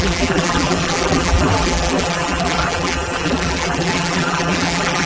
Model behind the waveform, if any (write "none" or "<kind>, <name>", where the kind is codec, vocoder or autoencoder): vocoder, BigVGAN v2